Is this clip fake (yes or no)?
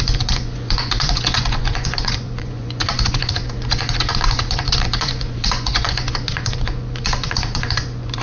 yes